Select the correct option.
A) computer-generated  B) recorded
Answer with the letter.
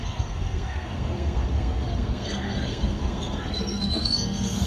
A